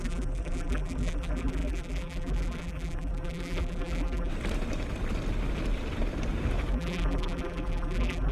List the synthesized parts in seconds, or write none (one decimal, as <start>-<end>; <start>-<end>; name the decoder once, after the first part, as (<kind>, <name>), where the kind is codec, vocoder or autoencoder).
0.0-4.3 (vocoder, BigVGAN v2); 6.7-8.3